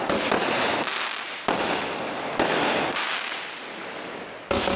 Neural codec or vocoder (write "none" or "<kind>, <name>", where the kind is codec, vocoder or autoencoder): none